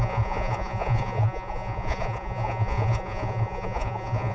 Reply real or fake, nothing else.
fake